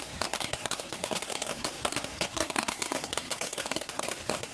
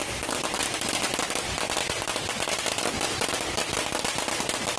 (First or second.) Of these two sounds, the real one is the second